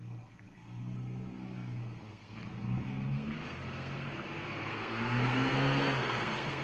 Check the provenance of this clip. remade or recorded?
remade